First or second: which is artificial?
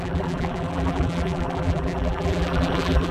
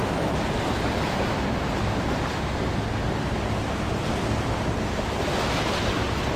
first